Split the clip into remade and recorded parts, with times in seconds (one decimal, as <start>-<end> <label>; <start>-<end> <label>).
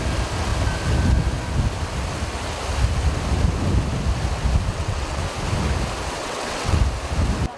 0.0-4.7 recorded; 4.7-5.2 remade; 5.2-6.2 recorded; 6.2-6.8 remade; 6.8-7.6 recorded